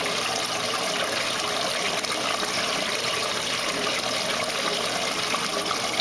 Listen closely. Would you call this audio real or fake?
real